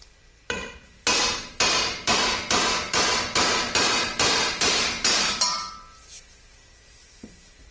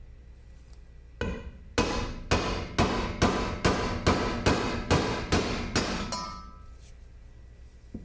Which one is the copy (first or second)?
first